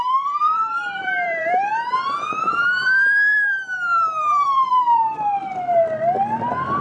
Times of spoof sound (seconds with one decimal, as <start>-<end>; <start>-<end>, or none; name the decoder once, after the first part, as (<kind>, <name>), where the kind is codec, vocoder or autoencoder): 0.0-6.8 (vocoder, BigVGAN v2)